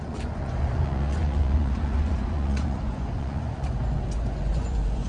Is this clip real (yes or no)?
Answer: no